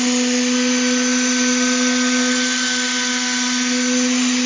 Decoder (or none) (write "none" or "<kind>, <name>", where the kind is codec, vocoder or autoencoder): none